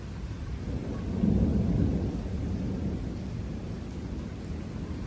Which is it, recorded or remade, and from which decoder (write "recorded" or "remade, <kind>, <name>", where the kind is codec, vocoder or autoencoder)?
recorded